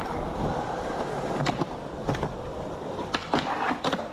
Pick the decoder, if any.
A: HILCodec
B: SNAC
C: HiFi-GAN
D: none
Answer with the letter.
D